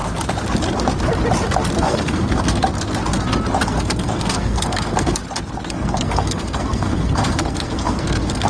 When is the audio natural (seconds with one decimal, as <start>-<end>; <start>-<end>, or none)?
0.0-1.8; 2.7-3.7; 5.2-5.7